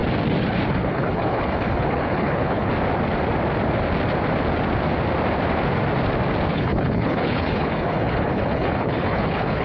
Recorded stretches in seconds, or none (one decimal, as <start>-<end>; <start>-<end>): 0.0-0.7; 2.7-6.5